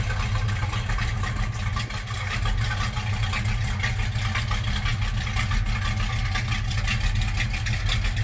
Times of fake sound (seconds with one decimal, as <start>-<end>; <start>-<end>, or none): none